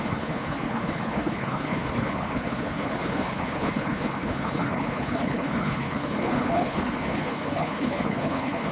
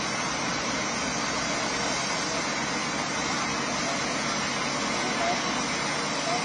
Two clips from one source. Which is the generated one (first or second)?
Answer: first